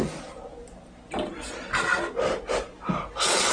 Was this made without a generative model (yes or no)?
yes